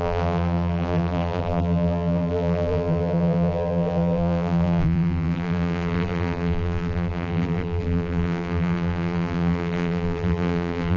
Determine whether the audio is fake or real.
fake